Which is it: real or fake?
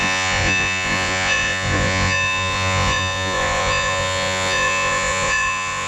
fake